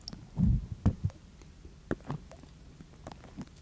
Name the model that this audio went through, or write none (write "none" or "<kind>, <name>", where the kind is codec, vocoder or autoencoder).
none